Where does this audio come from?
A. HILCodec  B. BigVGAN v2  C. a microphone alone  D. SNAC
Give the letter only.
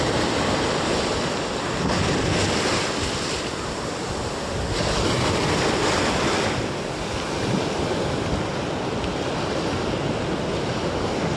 C